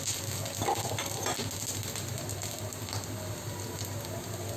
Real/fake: real